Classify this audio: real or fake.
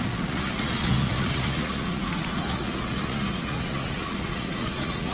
fake